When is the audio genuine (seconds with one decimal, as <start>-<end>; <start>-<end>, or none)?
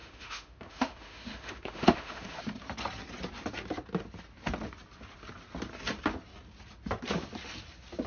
2.4-8.1